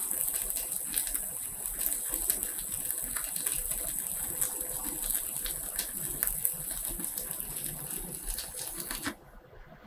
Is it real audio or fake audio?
real